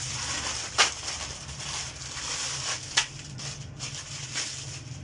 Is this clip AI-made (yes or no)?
yes